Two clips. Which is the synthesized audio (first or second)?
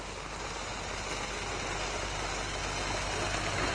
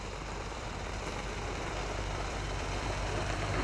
second